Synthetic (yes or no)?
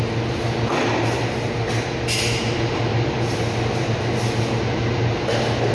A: no